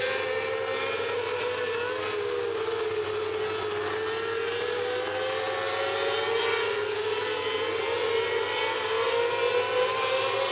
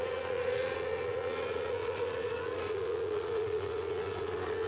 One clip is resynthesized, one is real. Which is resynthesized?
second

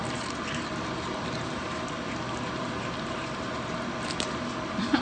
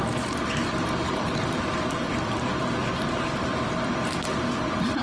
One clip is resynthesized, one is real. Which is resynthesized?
second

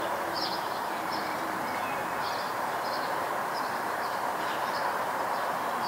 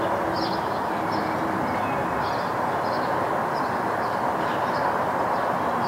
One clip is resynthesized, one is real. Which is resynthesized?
first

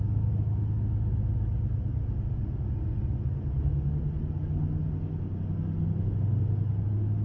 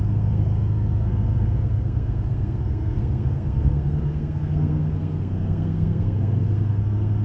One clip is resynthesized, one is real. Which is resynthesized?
second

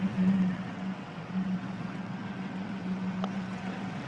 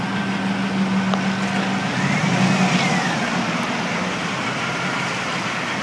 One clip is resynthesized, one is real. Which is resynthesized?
first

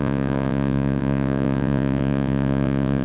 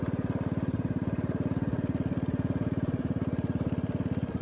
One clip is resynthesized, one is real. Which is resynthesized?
first